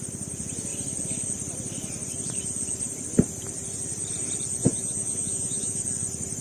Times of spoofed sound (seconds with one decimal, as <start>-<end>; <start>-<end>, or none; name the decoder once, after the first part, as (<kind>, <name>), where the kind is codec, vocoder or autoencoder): 4.6-5.8 (vocoder, Vocos)